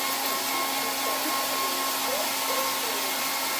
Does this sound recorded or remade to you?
recorded